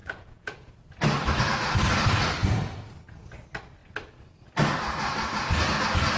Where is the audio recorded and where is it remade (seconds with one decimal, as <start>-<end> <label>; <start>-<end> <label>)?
0.0-0.7 remade; 0.7-2.4 recorded; 2.4-2.9 remade; 2.9-6.2 recorded